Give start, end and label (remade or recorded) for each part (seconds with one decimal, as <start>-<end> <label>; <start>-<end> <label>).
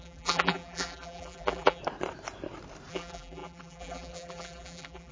0.0-1.8 remade; 1.8-2.9 recorded; 2.9-5.1 remade